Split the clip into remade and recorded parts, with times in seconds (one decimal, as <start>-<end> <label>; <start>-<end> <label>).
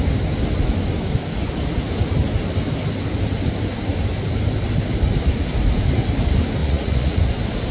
0.0-6.6 recorded; 6.6-7.2 remade; 7.2-7.7 recorded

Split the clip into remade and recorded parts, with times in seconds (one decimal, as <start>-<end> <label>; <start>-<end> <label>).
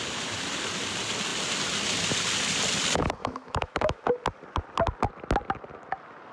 0.0-3.2 recorded; 3.2-4.1 remade; 4.1-6.3 recorded